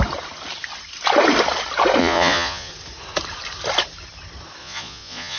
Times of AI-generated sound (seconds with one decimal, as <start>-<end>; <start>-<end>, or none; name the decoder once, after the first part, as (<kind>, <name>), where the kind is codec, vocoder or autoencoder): 2.0-2.7 (vocoder, Vocos); 4.6-5.4